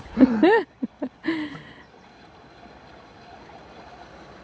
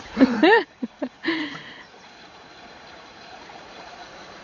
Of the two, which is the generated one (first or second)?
second